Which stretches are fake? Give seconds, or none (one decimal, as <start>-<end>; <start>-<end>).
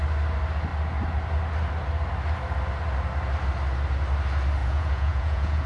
4.6-5.7